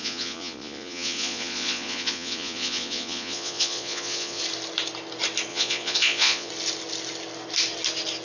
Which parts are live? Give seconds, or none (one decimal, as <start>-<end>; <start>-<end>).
4.4-5.5; 6.5-8.2